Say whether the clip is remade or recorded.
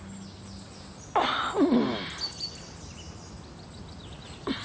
recorded